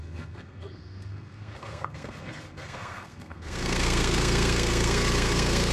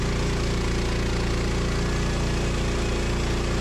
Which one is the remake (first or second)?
first